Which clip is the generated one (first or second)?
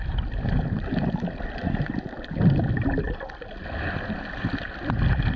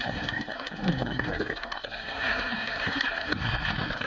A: second